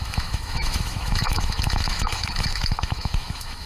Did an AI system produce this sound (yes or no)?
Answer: yes